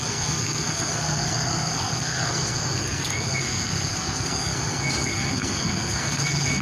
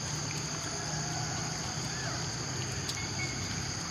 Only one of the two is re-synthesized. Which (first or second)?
first